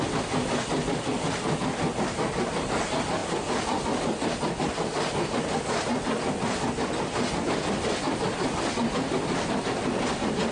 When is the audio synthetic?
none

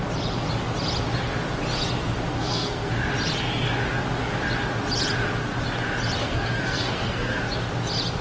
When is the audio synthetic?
2.3-2.9 (codec, SNAC); 6.2-7.4